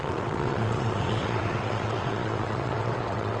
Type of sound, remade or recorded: remade